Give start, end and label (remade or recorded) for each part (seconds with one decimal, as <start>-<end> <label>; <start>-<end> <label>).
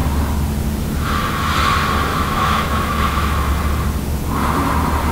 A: 0.0-2.1 recorded; 2.1-3.5 remade; 3.5-5.1 recorded